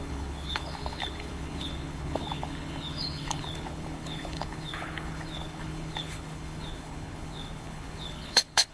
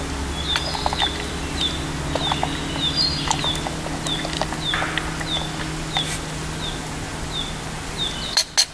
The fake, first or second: first